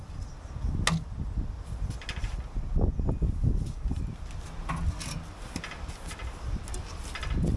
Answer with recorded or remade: recorded